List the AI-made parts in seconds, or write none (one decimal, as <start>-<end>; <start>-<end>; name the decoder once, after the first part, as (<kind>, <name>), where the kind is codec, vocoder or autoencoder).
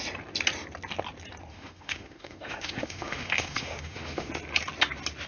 1.5-4.3 (autoencoder, DAC-VAE)